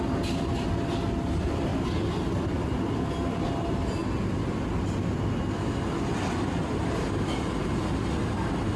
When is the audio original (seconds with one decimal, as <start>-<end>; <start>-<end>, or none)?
0.0-8.8